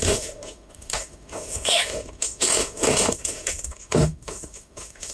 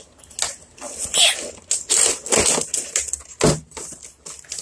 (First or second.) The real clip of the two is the second